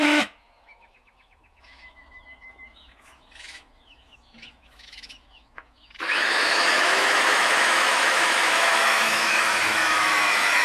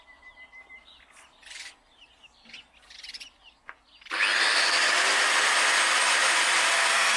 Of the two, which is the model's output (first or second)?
first